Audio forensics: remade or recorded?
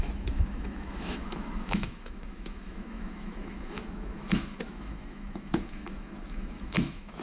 remade